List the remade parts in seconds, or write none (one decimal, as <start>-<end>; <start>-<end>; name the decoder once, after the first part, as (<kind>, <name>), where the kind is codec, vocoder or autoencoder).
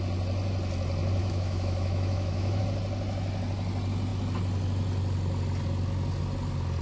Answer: 1.2-2.6 (autoencoder, DAC-VAE)